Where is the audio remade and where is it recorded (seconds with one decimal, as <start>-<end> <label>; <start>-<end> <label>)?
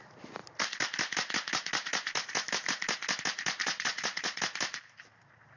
0.0-3.6 recorded; 3.6-4.4 remade; 4.4-5.6 recorded